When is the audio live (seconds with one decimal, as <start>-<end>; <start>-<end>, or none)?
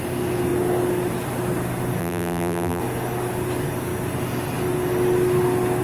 0.0-2.0; 2.8-5.8